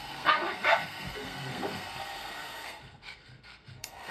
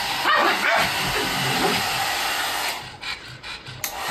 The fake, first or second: first